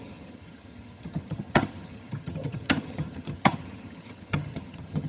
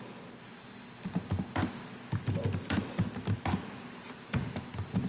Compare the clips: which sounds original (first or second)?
second